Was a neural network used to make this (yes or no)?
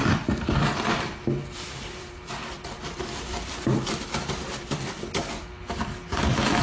yes